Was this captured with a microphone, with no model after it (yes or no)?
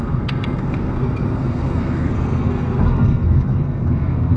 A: no